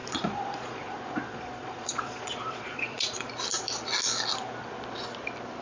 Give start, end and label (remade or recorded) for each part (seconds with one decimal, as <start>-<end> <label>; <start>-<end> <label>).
0.0-3.3 remade; 3.3-5.6 recorded